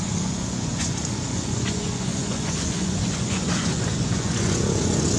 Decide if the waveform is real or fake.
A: fake